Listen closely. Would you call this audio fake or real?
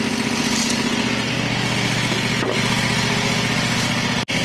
real